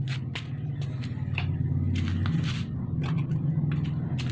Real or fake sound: real